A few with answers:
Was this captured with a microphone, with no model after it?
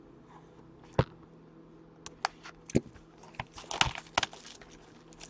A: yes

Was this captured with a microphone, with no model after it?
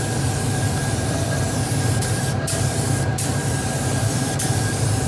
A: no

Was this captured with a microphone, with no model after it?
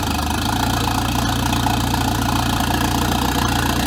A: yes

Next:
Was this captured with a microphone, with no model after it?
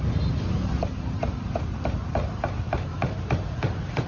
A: no